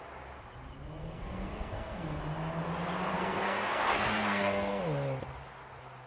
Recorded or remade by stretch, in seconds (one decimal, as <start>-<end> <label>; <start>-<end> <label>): 0.0-1.0 recorded; 1.0-2.2 remade; 2.2-3.1 recorded; 3.1-4.8 remade; 4.8-6.1 recorded